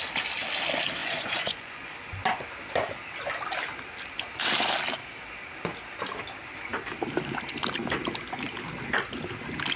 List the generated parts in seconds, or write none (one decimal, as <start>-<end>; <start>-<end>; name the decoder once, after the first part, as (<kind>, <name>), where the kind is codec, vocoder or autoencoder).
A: 1.0-1.9 (vocoder, Vocos)